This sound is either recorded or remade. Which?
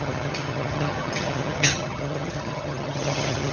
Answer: remade